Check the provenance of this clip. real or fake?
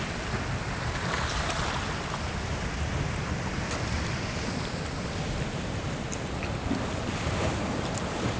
real